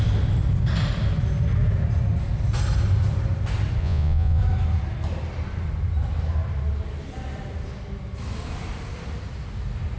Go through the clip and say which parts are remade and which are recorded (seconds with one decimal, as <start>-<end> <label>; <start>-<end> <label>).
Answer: 0.0-3.8 recorded; 3.8-4.4 remade; 4.4-10.0 recorded

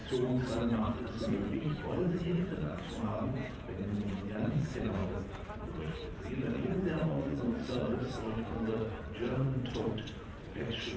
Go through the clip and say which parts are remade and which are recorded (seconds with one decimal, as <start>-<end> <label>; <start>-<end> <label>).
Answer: 0.0-0.7 recorded; 0.7-11.0 remade